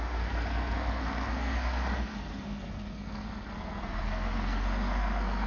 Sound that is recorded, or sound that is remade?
remade